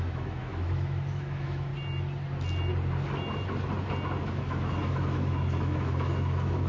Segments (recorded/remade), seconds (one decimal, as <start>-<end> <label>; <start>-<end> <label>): 0.0-1.7 remade; 1.7-4.2 recorded; 4.2-6.7 remade